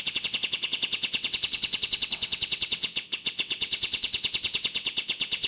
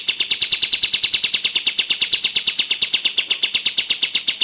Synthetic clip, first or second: first